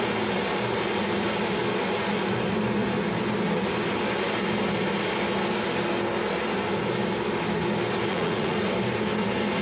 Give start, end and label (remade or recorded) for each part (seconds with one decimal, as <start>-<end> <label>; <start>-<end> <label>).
0.0-8.1 recorded; 8.1-8.7 remade; 8.7-9.6 recorded